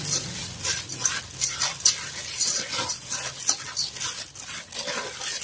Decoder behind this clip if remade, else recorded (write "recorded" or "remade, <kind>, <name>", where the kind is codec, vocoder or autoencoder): recorded